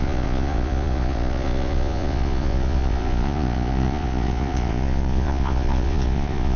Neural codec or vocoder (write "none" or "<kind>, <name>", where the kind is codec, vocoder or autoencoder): vocoder, Vocos